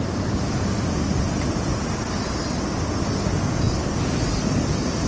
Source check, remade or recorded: recorded